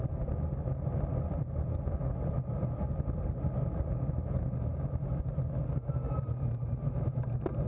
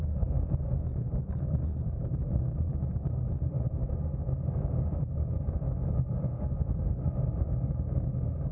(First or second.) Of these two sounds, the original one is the first